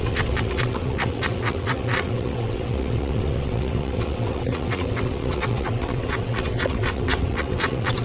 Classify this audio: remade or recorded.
remade